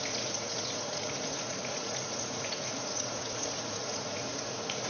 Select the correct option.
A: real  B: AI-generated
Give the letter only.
B